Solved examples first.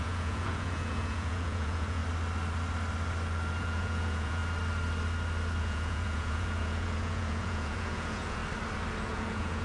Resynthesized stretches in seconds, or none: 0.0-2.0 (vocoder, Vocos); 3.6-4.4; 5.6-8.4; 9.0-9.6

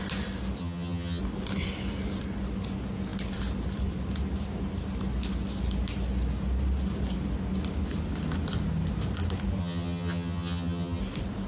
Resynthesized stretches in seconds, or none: 0.6-1.2 (vocoder, HiFi-GAN); 9.6-11.0

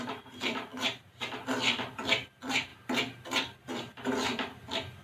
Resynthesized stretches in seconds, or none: none

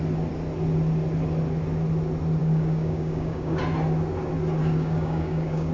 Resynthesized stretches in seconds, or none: 2.4-3.6 (codec, DAC); 4.6-5.7

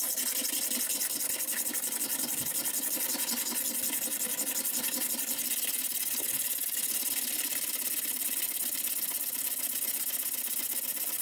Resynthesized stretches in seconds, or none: none

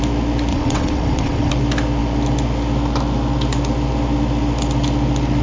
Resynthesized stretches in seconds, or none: 0.5-1.5 (vocoder, WaveNeXt)

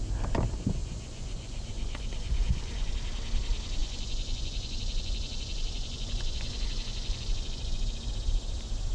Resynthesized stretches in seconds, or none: 0.8-2.9 (vocoder, Vocos); 3.8-8.1

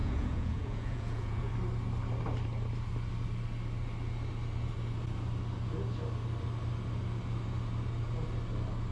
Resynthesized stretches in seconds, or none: 0.0-1.5 (vocoder, Vocos)